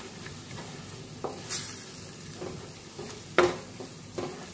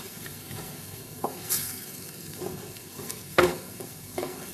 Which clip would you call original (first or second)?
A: first